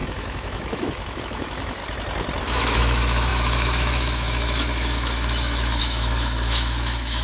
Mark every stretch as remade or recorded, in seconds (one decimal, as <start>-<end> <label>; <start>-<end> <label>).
0.0-1.8 remade; 1.8-2.4 recorded; 2.4-7.2 remade

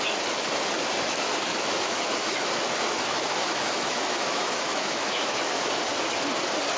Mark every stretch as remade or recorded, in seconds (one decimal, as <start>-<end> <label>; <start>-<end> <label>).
0.0-1.5 recorded; 1.5-5.6 remade; 5.6-6.8 recorded

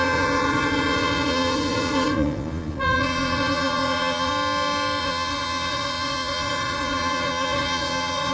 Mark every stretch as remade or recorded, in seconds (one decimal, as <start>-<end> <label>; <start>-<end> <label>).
0.0-4.3 remade; 4.3-5.0 recorded; 5.0-8.3 remade

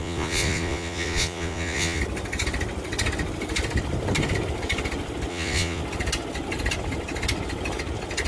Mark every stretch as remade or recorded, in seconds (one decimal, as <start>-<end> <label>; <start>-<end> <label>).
0.0-2.0 remade; 2.0-5.3 recorded; 5.3-5.8 remade; 5.8-8.3 recorded

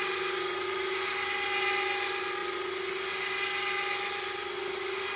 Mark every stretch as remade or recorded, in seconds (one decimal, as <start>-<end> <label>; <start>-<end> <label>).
0.0-5.2 recorded

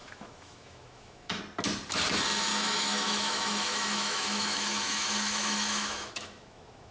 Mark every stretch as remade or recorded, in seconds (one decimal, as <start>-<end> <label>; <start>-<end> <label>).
0.0-1.4 remade; 1.4-2.5 recorded; 2.5-6.9 remade

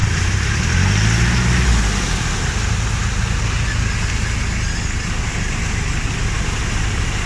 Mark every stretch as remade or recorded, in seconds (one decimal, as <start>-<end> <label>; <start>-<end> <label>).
0.0-7.3 recorded

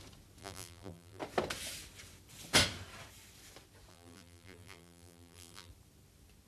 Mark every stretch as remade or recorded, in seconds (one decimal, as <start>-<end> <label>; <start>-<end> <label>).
0.0-0.4 recorded; 0.4-1.2 remade; 1.2-3.9 recorded; 3.9-5.7 remade; 5.7-6.5 recorded